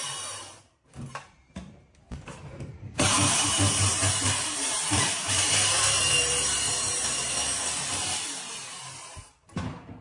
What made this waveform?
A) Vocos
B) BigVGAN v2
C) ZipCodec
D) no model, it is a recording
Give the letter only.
B